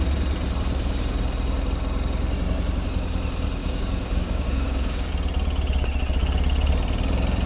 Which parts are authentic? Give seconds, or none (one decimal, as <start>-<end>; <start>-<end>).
0.0-3.6; 5.1-7.5